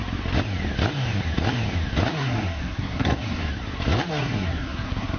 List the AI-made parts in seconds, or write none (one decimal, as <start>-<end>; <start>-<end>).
2.1-3.5; 4.1-5.2